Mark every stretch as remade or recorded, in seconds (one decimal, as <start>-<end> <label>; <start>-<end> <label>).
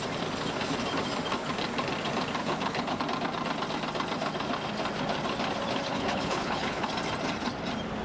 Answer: 0.0-2.4 recorded; 2.4-3.0 remade; 3.0-5.9 recorded; 5.9-6.9 remade; 6.9-8.0 recorded